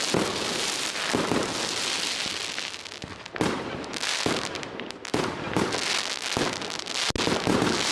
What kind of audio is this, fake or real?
real